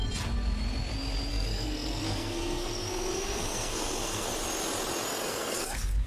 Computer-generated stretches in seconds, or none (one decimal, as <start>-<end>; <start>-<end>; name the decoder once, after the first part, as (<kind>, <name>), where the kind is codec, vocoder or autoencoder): 1.3-4.3 (codec, SNAC); 5.3-6.1